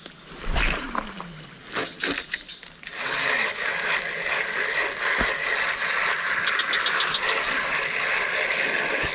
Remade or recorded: recorded